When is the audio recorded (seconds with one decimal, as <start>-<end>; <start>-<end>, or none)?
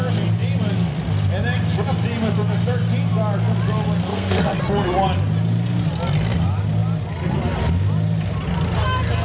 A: 0.0-4.1; 4.6-9.2